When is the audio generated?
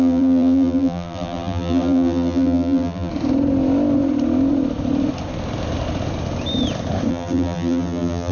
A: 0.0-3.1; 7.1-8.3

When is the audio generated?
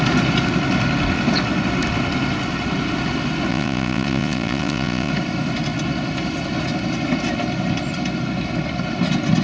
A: 3.5-5.1